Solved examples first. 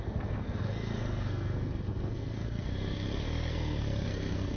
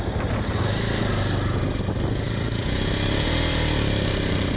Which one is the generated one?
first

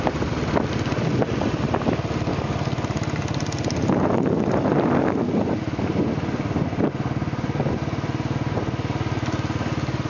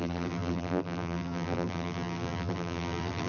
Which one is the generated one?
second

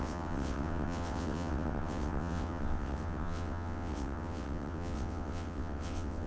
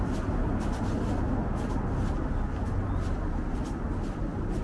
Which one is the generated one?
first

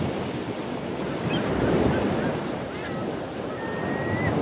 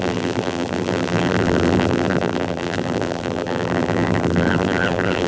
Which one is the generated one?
second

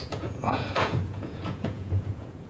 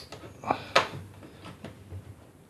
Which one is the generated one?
first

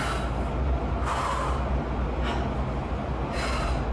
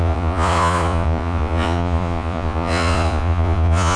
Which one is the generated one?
second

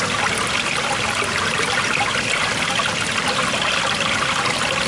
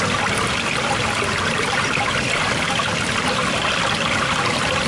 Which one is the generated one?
second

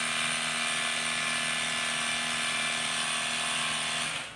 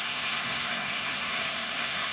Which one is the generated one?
second